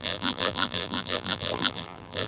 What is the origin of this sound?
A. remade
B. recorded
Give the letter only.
A